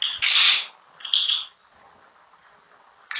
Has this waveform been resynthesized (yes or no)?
no